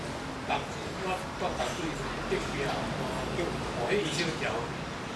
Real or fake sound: real